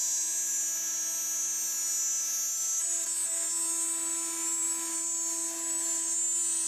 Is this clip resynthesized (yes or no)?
no